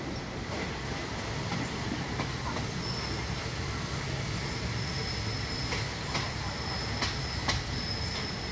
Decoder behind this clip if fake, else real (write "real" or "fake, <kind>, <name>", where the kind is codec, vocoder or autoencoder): real